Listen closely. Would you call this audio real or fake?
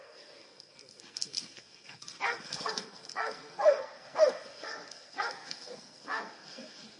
fake